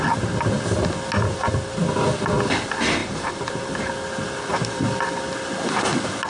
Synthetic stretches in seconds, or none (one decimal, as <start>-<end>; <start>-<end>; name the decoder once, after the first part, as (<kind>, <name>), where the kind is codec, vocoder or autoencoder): 3.0-3.9 (vocoder, BigVGAN v2); 4.5-5.0